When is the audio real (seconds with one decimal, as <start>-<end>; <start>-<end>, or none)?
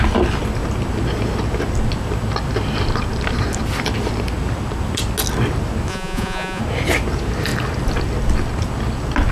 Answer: 0.0-5.9; 6.6-9.3